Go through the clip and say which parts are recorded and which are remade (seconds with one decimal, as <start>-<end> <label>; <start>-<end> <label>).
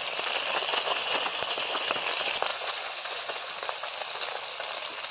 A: 0.0-0.7 recorded; 0.7-2.0 remade; 2.0-2.5 recorded; 2.5-3.5 remade; 3.5-5.1 recorded